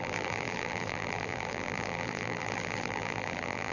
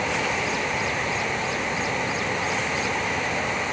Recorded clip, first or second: second